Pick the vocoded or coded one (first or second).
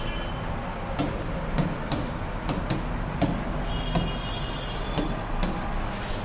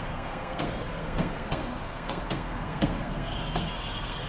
second